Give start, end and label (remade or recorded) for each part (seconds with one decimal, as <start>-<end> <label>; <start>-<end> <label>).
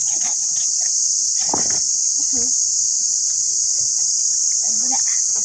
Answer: 0.0-0.6 remade; 0.6-5.4 recorded